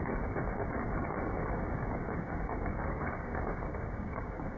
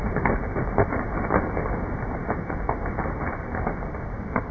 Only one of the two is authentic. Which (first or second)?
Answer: second